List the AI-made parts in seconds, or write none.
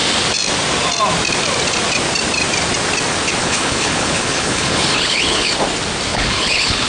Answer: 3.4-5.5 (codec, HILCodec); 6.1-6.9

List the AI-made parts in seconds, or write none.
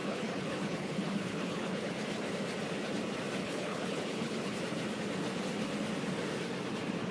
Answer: 0.0-1.9 (codec, HILCodec); 3.4-4.6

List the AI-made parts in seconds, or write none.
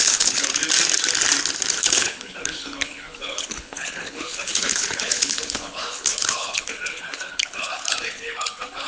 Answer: 0.0-0.6 (codec, HILCodec); 1.8-8.9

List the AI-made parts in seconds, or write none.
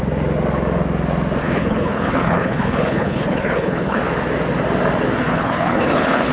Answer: 1.4-4.0 (codec, HILCodec); 5.3-6.3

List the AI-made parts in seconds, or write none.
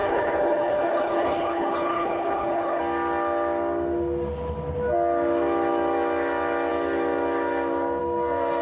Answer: 0.0-2.8 (codec, HILCodec)